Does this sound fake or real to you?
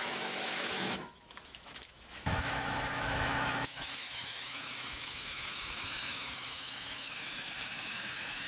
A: fake